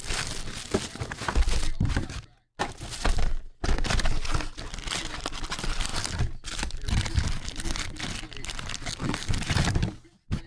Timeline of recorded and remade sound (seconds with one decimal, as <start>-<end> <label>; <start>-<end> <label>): 0.0-10.5 recorded